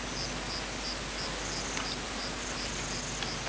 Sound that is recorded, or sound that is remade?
recorded